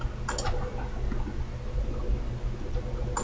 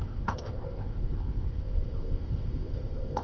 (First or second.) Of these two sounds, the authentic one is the first